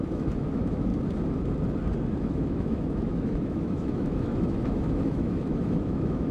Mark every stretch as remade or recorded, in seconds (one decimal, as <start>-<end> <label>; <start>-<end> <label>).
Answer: 0.0-0.9 remade; 0.9-2.2 recorded; 2.2-6.3 remade